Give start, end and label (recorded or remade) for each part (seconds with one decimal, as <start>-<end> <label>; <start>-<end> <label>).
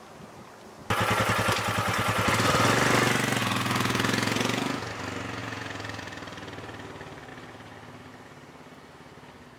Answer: 0.0-3.4 recorded; 3.4-4.9 remade; 4.9-5.4 recorded; 5.4-6.0 remade; 6.0-9.6 recorded